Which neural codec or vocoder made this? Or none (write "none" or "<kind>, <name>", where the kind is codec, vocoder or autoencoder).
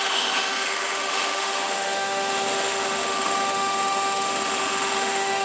autoencoder, DAC-VAE